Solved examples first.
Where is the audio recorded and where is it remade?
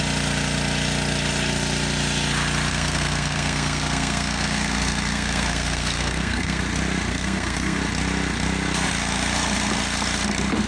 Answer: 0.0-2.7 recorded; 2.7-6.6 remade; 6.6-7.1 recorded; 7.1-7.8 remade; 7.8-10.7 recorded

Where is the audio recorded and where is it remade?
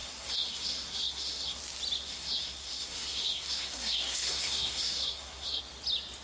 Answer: 0.0-1.6 remade; 1.6-2.0 recorded; 2.0-5.6 remade; 5.6-6.2 recorded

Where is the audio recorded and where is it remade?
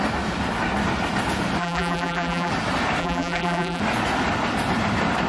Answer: 0.0-1.6 recorded; 1.6-2.5 remade; 2.5-3.0 recorded; 3.0-3.8 remade; 3.8-5.3 recorded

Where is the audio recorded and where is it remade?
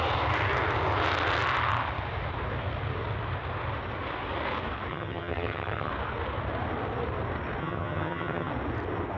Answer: 0.0-4.9 recorded; 4.9-5.9 remade; 5.9-7.6 recorded; 7.6-8.5 remade; 8.5-9.2 recorded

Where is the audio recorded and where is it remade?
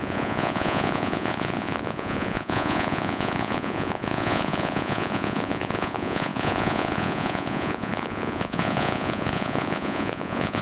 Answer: 0.0-10.6 remade